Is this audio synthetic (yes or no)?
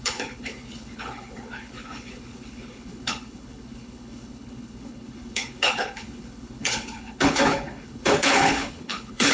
yes